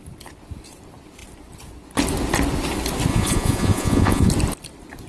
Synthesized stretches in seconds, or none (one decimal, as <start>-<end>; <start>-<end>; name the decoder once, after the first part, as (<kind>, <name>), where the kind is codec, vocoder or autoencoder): 3.1-4.3 (vocoder, Vocos)